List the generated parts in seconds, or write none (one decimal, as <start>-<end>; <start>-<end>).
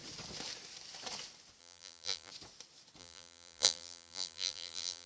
1.6-2.3; 3.0-5.1